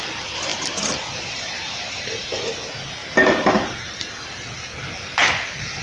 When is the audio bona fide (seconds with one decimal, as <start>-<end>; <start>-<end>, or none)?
0.0-0.5; 2.4-5.8

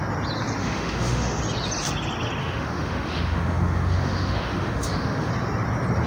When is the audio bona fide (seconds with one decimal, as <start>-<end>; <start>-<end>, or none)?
0.0-0.6; 1.4-2.4; 5.3-6.1

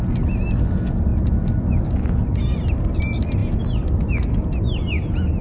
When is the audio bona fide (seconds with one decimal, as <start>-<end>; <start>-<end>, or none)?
0.0-5.4

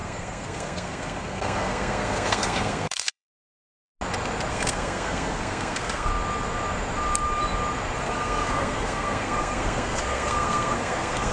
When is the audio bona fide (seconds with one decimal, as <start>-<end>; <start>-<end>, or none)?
3.9-4.5; 6.1-8.0

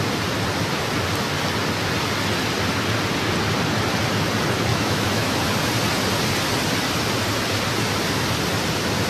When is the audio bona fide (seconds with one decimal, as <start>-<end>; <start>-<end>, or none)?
0.0-4.7; 5.4-9.1

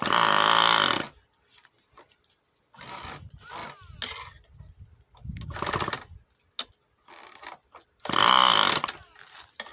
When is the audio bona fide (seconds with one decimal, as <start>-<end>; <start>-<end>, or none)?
0.0-9.7

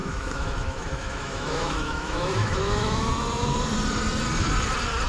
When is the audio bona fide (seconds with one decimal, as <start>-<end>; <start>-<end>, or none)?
3.1-5.1

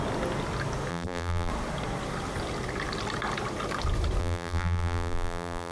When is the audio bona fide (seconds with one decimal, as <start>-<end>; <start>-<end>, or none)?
0.0-0.9; 1.5-4.2